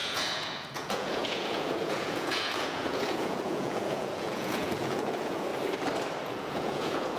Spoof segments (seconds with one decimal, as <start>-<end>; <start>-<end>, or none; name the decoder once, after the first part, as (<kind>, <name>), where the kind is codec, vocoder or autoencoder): 0.0-5.5 (vocoder, Vocos); 6.2-7.2